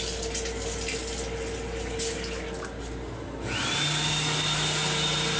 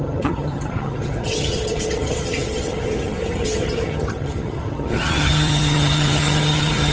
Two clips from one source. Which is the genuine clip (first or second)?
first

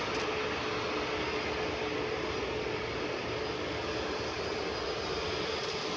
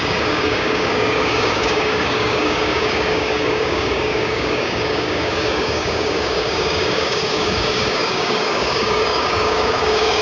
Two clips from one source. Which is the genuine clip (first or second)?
first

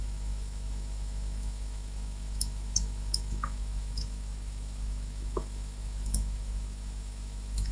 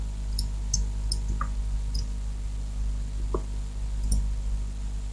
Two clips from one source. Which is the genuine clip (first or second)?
second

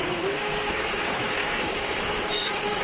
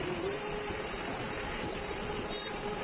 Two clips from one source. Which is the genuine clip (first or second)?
second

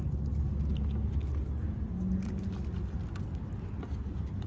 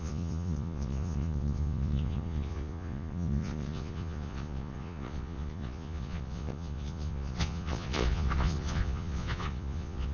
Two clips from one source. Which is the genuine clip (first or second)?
first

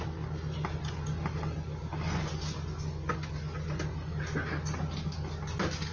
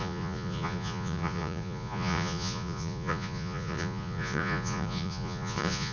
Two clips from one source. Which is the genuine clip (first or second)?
first